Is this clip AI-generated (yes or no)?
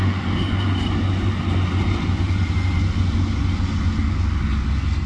no